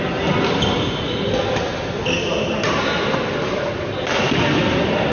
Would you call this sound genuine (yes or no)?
yes